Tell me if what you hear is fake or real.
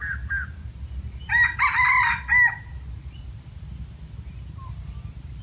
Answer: real